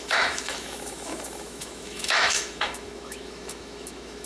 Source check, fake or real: fake